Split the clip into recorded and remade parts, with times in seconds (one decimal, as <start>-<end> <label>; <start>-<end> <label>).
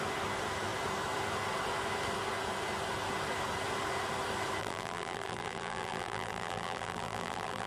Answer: 0.0-4.6 recorded; 4.6-7.7 remade